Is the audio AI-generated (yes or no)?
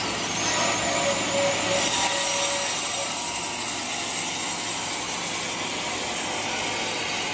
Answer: no